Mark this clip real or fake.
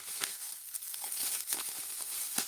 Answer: fake